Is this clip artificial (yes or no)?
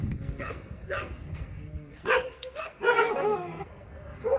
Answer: yes